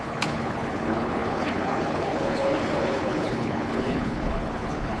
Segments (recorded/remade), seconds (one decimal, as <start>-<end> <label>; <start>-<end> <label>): 0.0-5.0 remade